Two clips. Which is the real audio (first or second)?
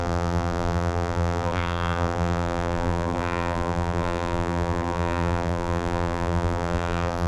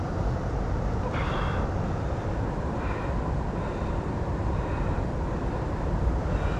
second